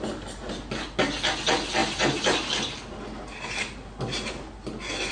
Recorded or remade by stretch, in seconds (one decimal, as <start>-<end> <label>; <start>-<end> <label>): 0.0-5.1 recorded